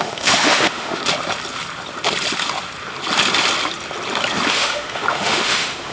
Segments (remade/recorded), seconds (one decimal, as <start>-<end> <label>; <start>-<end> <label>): 0.0-1.0 remade; 1.0-4.5 recorded; 4.5-5.9 remade